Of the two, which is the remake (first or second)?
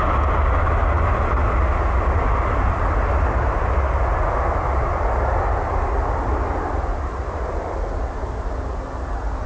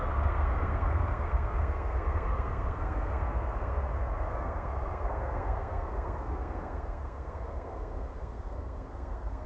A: second